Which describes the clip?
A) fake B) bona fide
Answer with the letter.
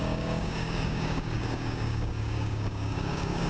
A